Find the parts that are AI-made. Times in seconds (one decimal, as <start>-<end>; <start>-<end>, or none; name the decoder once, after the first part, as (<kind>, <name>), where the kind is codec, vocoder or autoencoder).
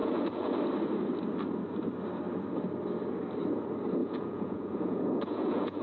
0.0-0.5 (vocoder, Vocos); 4.0-5.8